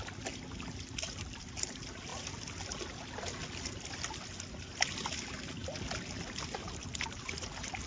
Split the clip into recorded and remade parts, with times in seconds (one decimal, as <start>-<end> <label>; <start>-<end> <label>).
0.0-7.9 recorded